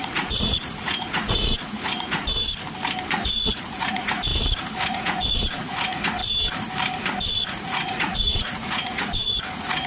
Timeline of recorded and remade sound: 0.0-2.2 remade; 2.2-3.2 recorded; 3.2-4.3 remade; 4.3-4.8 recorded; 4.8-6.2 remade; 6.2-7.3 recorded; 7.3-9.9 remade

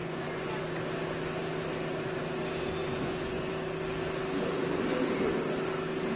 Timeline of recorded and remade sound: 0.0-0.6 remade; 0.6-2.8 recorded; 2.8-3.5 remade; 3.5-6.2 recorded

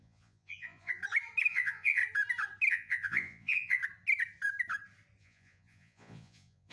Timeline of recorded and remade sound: 0.0-1.0 remade; 1.0-1.5 recorded; 1.5-2.0 remade; 2.0-2.7 recorded; 2.7-3.8 remade; 3.8-5.2 recorded; 5.2-6.7 remade

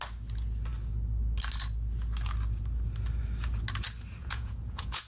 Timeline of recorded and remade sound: 0.0-4.2 recorded; 4.2-5.1 remade